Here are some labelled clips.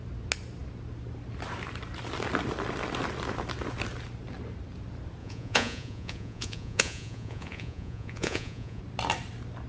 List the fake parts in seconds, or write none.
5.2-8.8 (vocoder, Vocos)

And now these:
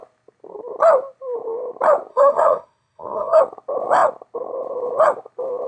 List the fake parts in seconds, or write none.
2.1-3.4 (codec, SNAC)

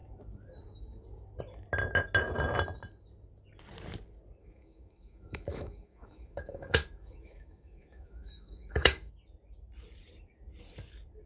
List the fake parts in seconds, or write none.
4.4-9.1 (autoencoder, DAC-VAE)

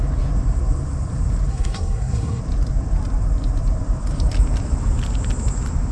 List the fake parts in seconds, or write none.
1.5-2.4 (codec, SNAC)

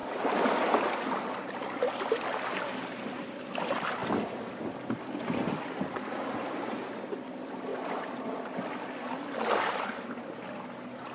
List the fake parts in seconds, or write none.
none